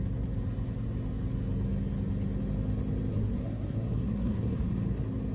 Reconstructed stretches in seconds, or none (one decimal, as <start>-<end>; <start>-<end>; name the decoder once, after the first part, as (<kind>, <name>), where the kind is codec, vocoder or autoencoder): 3.1-4.7 (codec, SNAC)